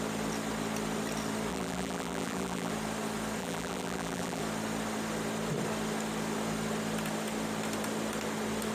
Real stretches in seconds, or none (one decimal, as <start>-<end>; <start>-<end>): 0.0-1.5; 2.7-3.4; 4.4-8.7